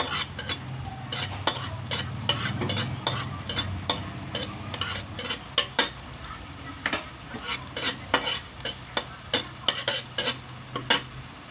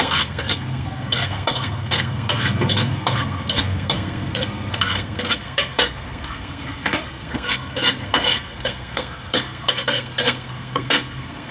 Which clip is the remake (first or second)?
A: second